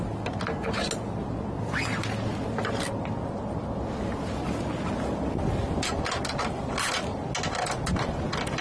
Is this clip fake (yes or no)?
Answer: no